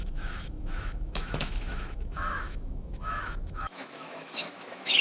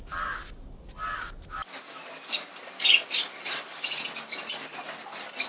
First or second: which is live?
second